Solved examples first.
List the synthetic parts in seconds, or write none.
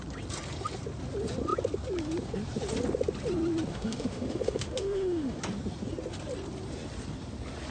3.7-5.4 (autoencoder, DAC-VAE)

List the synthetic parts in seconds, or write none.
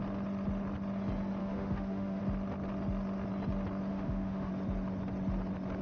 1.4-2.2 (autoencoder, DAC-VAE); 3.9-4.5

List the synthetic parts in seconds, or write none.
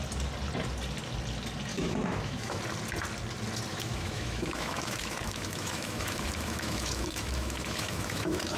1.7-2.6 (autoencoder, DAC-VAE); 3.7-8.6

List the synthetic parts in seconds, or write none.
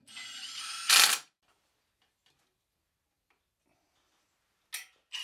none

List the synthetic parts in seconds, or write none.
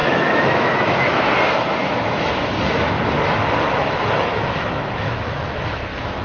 0.0-1.2 (autoencoder, DAC-VAE); 1.8-2.3; 3.7-6.2